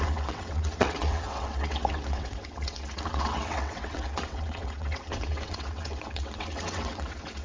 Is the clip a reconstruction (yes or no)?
yes